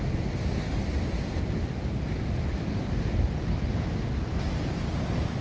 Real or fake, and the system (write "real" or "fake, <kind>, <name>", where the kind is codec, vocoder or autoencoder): real